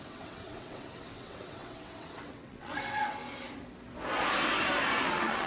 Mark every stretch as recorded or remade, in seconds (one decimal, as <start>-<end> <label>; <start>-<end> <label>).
0.0-3.2 remade; 3.2-5.1 recorded; 5.1-5.5 remade